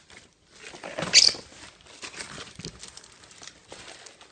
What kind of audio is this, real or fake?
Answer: real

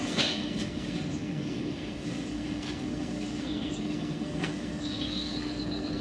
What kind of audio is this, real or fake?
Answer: fake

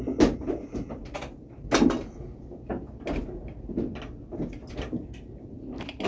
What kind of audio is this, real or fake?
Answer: real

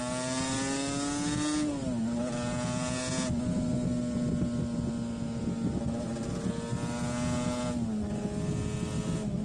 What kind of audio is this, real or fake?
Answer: real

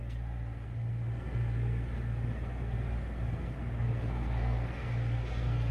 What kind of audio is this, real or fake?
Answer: fake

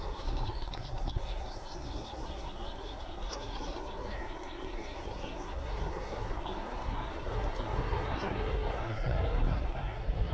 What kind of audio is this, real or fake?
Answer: fake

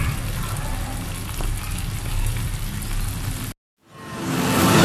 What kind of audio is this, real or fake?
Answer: real